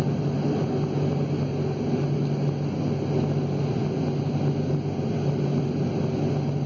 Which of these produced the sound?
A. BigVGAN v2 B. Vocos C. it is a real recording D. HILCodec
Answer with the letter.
C